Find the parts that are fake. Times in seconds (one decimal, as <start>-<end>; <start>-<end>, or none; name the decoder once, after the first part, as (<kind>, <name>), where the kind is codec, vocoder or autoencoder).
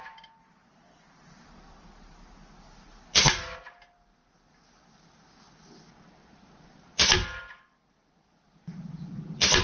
none